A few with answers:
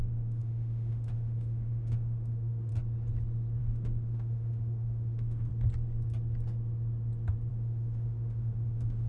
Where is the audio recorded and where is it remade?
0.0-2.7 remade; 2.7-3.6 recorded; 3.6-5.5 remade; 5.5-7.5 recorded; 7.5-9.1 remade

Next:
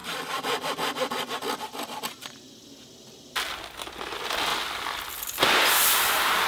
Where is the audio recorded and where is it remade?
0.0-6.5 recorded

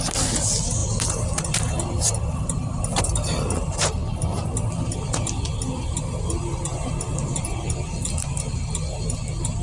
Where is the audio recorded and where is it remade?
0.0-9.6 recorded